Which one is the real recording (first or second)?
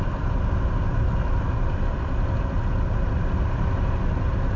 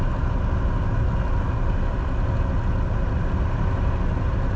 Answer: second